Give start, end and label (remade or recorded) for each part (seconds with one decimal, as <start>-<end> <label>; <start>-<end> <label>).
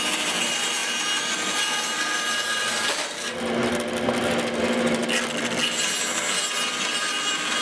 0.0-0.8 remade; 0.8-4.6 recorded; 4.6-5.0 remade; 5.0-7.6 recorded